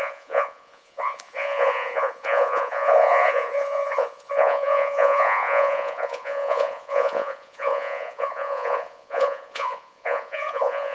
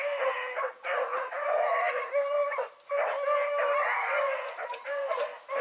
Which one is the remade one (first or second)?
first